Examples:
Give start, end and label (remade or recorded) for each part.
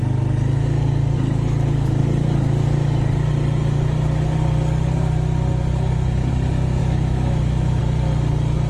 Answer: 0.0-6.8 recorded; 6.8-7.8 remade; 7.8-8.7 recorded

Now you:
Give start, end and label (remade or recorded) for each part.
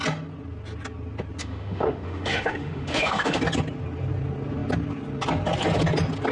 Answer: 0.0-1.4 recorded; 1.4-3.4 remade; 3.4-6.3 recorded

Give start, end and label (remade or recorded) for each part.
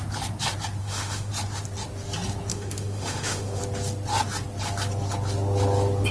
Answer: 0.0-0.8 recorded; 0.8-1.3 remade; 1.3-2.5 recorded; 2.5-3.6 remade; 3.6-6.1 recorded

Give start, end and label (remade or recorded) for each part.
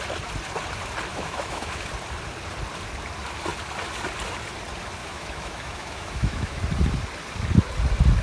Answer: 0.0-1.1 recorded; 1.1-1.9 remade; 1.9-5.0 recorded; 5.0-6.6 remade; 6.6-8.2 recorded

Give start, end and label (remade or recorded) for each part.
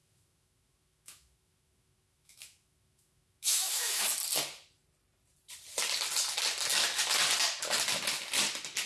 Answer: 0.0-4.0 remade; 4.0-8.9 recorded